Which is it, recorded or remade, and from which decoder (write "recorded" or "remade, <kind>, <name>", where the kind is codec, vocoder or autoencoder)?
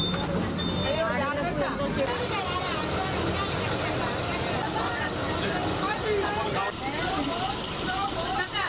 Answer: recorded